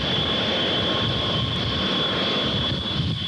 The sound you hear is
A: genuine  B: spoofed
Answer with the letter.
A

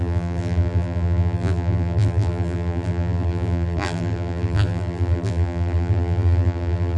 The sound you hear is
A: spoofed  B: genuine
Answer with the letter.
A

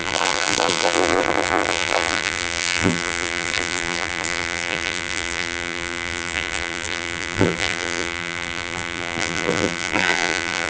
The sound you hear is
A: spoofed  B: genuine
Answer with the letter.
A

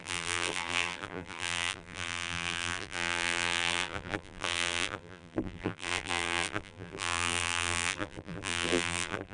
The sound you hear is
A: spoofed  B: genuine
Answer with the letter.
A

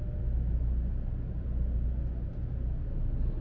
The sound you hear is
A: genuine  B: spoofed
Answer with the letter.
A